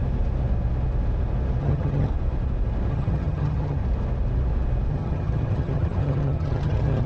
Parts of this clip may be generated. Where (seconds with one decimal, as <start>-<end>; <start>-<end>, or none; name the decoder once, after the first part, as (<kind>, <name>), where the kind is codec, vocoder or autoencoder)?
1.6-2.1 (vocoder, HiFi-GAN); 2.9-3.8; 4.9-7.1